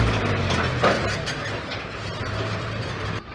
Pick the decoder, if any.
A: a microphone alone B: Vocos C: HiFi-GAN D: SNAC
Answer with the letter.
A